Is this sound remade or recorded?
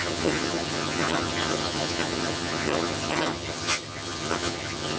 remade